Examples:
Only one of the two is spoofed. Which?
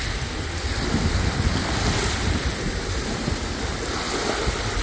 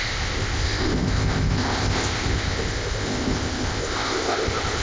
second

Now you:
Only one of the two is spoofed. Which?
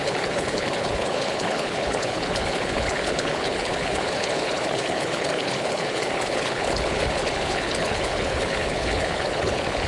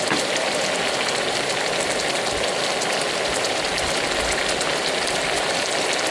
first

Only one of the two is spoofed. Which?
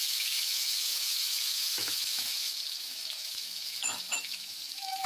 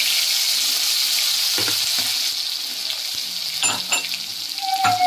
first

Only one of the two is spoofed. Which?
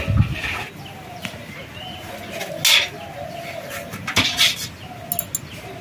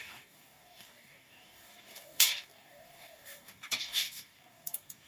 second